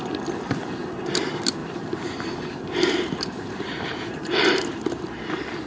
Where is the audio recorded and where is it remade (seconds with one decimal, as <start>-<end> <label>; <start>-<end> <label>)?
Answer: 0.0-1.6 recorded; 1.6-5.0 remade; 5.0-5.7 recorded